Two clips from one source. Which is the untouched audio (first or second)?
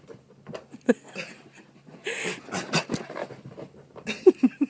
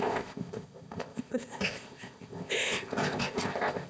first